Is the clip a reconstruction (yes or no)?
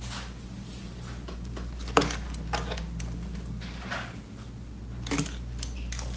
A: no